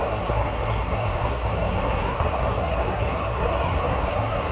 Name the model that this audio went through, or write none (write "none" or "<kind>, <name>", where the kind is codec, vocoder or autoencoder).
codec, SNAC